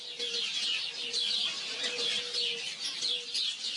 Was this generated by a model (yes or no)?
no